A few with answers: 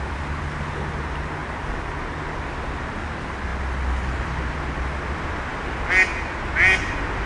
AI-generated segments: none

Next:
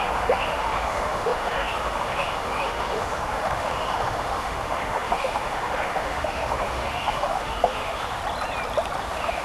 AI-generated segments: 0.0-8.2; 9.0-9.4

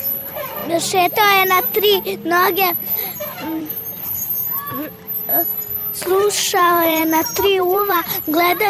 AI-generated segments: 0.0-0.6; 3.6-4.3; 6.1-7.0; 7.6-8.7

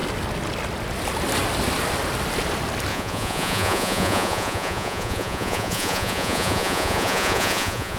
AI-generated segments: 2.9-8.0

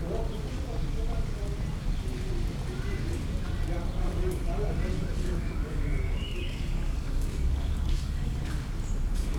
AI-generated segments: 5.0-8.6

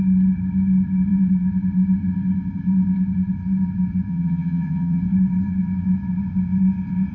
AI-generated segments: 4.1-5.0

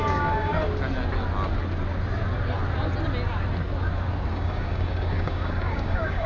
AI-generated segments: 0.0-0.5; 4.3-6.3